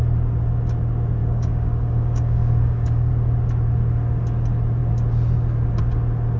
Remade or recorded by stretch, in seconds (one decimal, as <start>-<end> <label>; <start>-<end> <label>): 0.0-1.2 recorded; 1.2-3.1 remade; 3.1-6.4 recorded